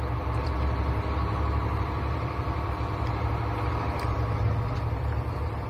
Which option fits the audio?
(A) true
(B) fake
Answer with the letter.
B